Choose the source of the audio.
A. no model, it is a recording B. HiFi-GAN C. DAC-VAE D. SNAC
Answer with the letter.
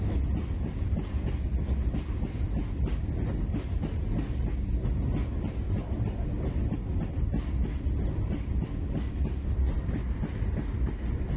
A